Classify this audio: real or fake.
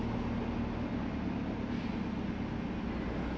real